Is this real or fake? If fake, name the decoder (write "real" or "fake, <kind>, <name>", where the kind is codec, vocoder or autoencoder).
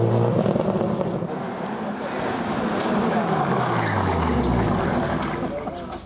real